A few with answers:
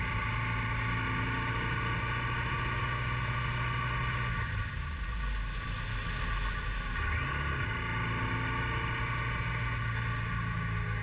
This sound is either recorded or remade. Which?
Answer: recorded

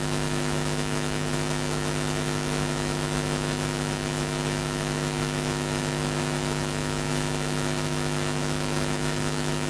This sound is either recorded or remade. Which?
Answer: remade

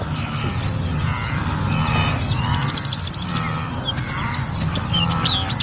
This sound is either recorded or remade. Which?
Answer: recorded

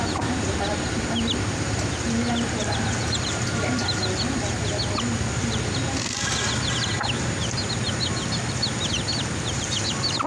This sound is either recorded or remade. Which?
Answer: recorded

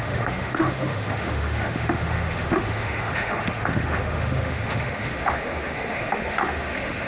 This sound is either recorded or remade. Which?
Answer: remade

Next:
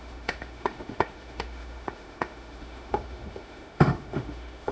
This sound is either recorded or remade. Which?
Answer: remade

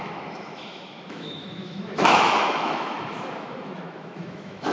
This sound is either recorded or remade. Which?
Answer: remade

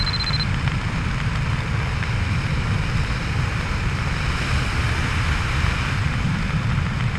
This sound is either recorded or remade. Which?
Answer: recorded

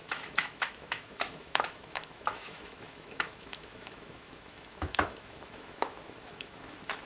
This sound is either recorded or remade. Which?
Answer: remade